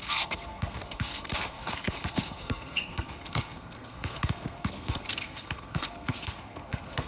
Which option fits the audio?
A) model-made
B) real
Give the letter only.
A